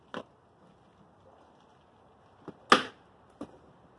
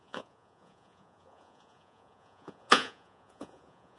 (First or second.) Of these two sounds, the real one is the first